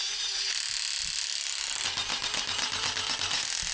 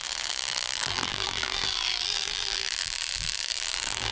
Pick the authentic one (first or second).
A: first